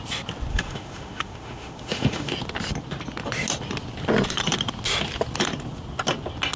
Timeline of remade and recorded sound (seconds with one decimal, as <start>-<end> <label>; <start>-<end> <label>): 0.0-0.5 recorded; 0.5-2.3 remade; 2.3-6.6 recorded